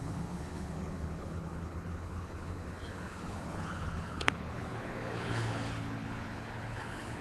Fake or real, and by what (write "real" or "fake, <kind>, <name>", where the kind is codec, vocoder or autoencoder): fake, codec, HILCodec